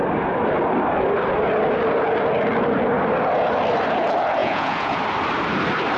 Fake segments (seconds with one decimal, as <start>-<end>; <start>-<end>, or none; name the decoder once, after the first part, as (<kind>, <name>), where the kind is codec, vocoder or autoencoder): 4.4-5.0 (vocoder, Vocos)